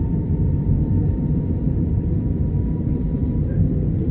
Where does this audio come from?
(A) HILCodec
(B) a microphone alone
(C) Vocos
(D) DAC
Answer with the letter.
B